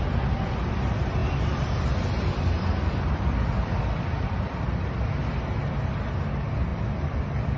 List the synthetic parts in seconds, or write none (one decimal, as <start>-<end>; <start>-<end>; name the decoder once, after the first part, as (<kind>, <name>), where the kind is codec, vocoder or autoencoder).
1.2-4.9 (vocoder, BigVGAN v2); 6.7-7.6